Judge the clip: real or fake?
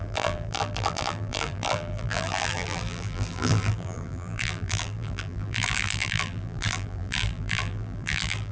fake